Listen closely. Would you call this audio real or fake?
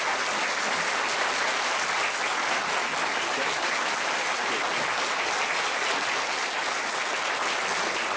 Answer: real